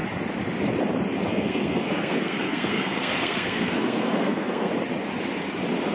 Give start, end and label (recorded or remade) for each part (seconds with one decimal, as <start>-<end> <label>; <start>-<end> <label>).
0.0-1.3 recorded; 1.3-4.7 remade; 4.7-5.9 recorded